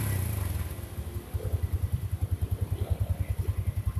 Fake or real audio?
real